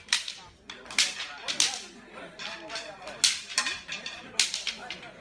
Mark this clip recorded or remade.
recorded